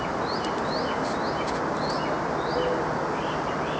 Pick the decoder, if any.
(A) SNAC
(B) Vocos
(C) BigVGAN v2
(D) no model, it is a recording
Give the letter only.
D